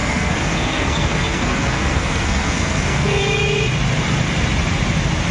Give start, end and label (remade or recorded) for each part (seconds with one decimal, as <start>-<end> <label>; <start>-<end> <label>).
0.0-3.2 remade; 3.2-5.3 recorded